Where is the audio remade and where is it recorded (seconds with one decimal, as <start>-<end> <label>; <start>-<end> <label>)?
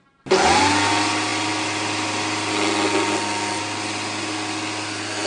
0.0-5.3 recorded